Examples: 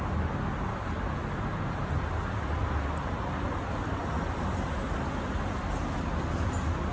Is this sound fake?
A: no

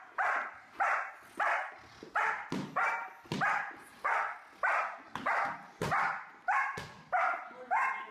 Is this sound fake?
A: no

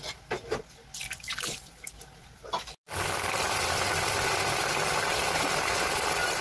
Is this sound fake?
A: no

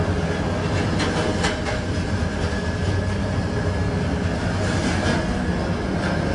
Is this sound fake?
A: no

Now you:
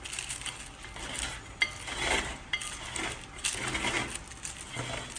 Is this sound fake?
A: no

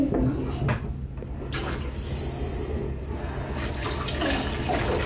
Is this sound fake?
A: no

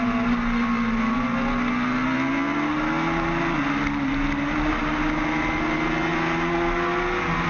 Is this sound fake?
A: no